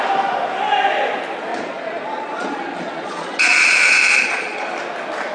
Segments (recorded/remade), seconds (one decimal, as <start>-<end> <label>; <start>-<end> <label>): 0.0-1.5 recorded; 1.5-4.7 remade; 4.7-5.3 recorded